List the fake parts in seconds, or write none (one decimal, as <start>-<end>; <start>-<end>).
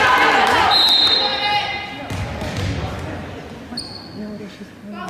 none